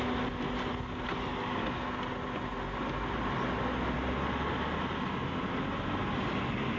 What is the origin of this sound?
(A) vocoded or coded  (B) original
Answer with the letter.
B